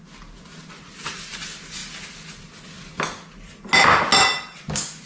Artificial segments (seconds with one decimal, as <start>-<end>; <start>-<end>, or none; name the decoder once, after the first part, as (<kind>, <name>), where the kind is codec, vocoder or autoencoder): none

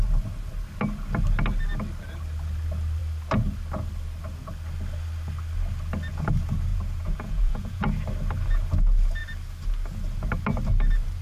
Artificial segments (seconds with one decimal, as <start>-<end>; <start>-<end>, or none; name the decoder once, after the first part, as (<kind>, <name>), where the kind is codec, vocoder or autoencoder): 6.7-7.8 (vocoder, Vocos)